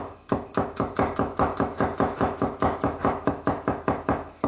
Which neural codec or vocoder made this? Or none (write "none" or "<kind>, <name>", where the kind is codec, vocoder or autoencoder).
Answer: autoencoder, DAC-VAE